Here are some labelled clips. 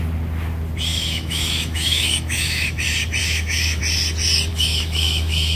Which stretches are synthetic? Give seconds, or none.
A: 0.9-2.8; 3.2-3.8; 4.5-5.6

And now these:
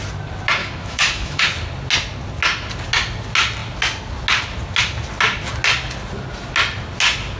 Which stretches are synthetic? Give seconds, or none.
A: 0.6-1.4

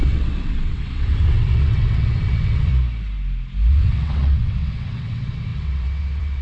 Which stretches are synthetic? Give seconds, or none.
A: 0.0-2.7; 3.7-6.4